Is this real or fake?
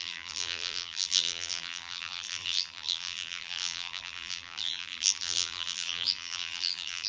fake